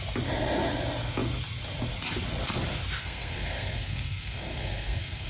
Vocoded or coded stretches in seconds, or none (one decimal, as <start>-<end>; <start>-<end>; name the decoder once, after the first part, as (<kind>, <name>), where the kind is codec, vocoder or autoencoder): 3.0-5.3 (codec, SNAC)